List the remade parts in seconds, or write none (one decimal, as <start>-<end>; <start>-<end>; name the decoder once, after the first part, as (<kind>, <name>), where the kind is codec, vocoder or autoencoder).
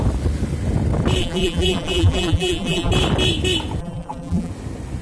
1.2-2.9 (vocoder, BigVGAN v2); 3.8-4.5